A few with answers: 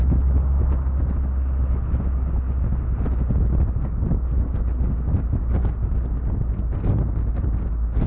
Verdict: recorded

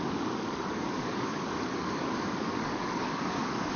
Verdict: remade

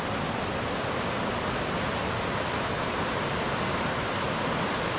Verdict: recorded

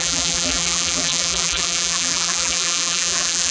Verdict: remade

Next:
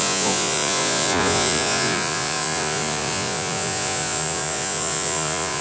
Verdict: remade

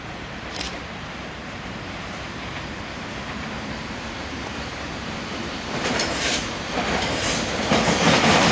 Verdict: remade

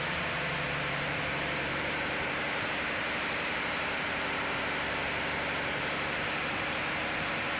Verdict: remade